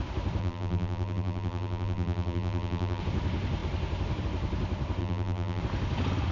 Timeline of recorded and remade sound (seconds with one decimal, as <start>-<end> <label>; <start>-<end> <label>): 0.0-0.4 recorded; 0.4-3.0 remade; 3.0-5.0 recorded; 5.0-5.6 remade; 5.6-6.3 recorded